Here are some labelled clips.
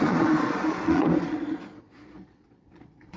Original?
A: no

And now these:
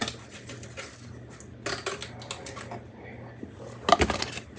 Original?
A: yes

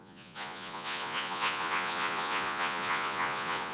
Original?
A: no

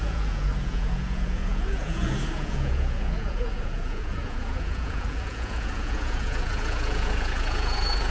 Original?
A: no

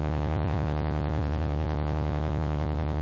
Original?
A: no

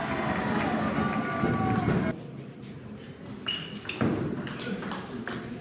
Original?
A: yes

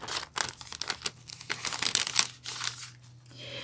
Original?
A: yes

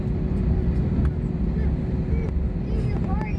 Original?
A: yes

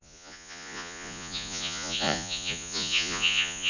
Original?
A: no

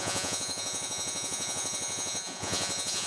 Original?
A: no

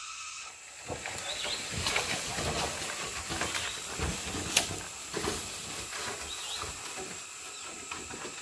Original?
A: yes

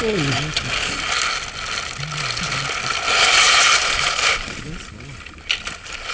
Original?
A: yes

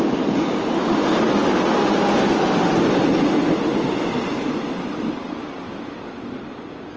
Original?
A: yes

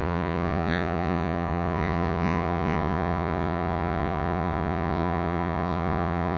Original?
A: no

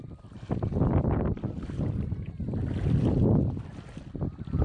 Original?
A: yes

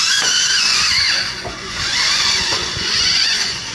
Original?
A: no